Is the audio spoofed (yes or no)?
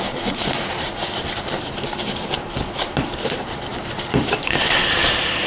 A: yes